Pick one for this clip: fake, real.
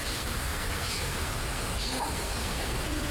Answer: fake